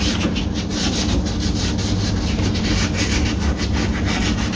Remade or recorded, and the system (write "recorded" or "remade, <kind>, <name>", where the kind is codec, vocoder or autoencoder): recorded